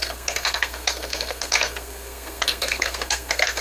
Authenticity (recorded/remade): remade